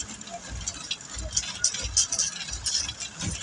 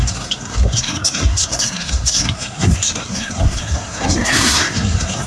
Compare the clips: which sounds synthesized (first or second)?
second